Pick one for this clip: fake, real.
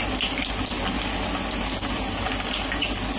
real